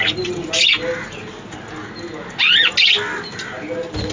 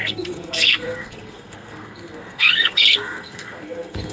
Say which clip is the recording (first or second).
first